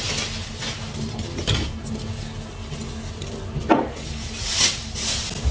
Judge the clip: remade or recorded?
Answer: recorded